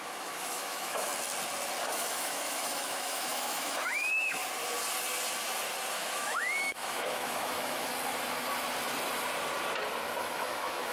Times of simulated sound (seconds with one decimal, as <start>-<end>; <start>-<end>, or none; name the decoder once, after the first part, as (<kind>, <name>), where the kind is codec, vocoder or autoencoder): 0.0-1.1 (autoencoder, DAC-VAE); 1.8-4.4; 5.9-7.9; 10.2-10.9